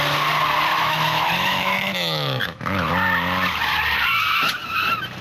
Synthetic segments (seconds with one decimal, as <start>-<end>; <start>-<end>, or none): 0.7-2.9